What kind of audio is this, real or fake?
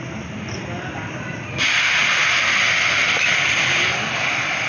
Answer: real